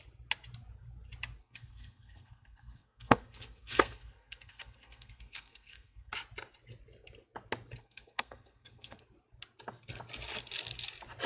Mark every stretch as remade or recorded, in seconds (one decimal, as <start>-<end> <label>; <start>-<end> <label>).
0.0-1.4 recorded; 1.4-6.1 remade; 6.1-7.8 recorded; 7.8-9.0 remade; 9.0-11.3 recorded